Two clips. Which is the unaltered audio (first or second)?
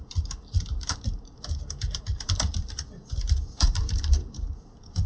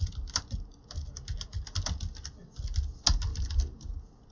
second